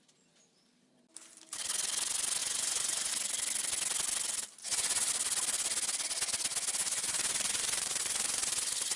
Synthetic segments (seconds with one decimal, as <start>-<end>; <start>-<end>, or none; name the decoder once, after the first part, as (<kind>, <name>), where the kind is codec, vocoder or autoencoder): 2.4-3.1 (vocoder, Vocos); 4.6-5.1; 6.8-9.0